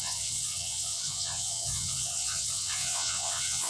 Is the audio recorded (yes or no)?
no